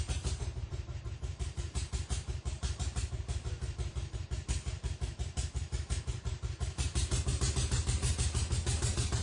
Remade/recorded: remade